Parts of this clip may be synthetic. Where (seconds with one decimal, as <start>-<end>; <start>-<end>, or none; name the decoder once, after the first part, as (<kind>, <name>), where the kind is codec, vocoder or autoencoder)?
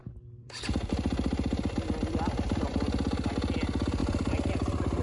4.0-4.5 (vocoder, BigVGAN v2)